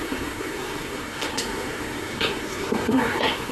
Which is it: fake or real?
fake